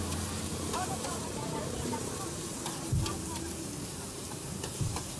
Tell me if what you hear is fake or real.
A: fake